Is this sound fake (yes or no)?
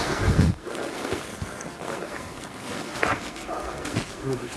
yes